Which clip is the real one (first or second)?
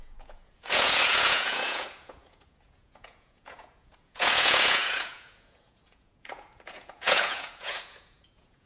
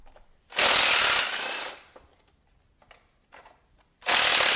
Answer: second